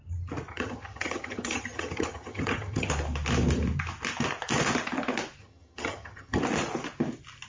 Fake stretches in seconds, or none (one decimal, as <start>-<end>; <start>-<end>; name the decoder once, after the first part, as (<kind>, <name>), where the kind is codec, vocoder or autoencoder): 0.5-2.9 (vocoder, HiFi-GAN); 5.4-6.4

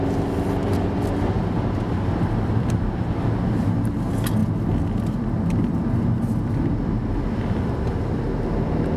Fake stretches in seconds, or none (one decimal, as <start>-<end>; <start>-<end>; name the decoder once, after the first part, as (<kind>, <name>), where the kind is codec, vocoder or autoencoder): none

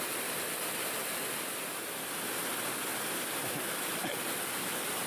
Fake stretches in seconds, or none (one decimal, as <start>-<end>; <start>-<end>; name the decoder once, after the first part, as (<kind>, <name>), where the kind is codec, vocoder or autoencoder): none

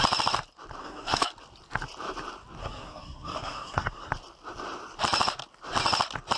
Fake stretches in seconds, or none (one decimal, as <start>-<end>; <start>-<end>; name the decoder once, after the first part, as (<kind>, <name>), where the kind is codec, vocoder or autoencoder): 0.8-1.3 (codec, SNAC); 2.6-4.1

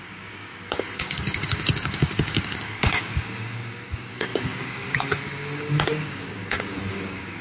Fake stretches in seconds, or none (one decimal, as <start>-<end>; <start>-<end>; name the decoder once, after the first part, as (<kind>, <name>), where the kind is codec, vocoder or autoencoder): 0.0-7.4 (codec, DAC)

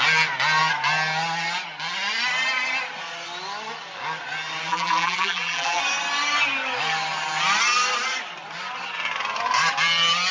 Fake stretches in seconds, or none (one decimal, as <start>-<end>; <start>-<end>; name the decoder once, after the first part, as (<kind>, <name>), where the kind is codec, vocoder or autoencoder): 4.7-5.8 (vocoder, BigVGAN v2)

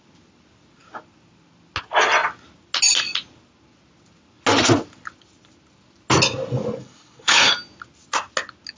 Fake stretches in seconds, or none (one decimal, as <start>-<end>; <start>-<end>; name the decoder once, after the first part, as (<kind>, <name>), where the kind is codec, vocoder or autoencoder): 6.8-7.5 (codec, HILCodec)